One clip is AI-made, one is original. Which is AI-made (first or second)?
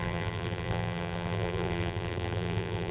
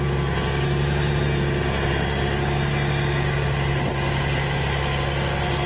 first